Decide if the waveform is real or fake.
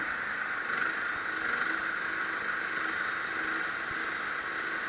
real